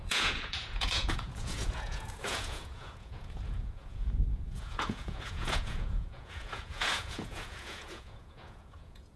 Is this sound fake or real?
fake